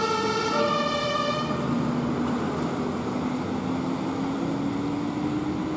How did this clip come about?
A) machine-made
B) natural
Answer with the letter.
B